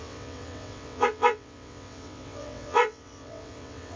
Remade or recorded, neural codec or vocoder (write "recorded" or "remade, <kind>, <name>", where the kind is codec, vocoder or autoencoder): remade, vocoder, WaveNeXt